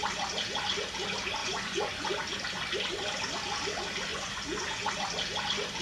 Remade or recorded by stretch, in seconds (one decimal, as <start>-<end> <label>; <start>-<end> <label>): 0.0-1.4 recorded; 1.4-2.1 remade; 2.1-4.1 recorded; 4.1-4.9 remade; 4.9-5.8 recorded